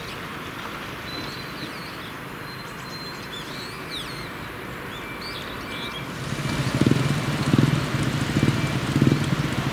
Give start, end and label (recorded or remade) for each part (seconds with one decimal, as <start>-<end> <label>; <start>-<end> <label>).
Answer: 0.0-9.7 recorded